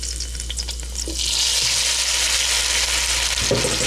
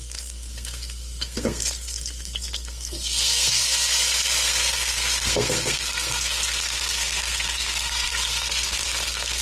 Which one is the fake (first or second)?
second